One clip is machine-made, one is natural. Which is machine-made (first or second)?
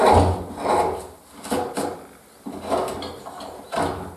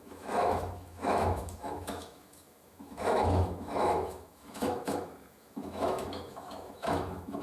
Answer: second